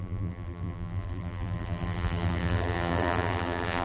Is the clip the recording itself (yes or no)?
no